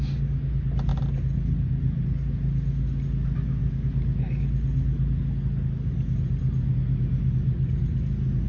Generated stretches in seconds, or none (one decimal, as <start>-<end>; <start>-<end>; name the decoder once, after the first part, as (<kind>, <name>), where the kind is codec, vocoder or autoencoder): none